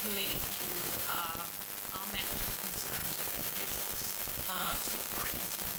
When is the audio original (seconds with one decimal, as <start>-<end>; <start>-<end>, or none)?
1.2-2.2